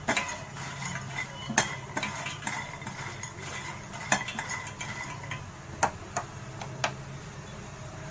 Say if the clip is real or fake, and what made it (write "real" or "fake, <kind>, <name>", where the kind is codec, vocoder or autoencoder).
real